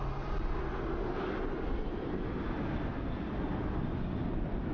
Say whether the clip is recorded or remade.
recorded